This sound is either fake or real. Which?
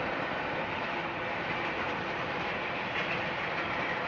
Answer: real